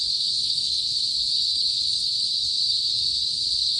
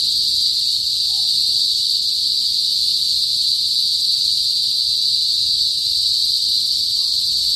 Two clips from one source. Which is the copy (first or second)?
first